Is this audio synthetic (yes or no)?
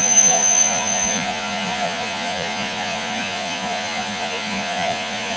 yes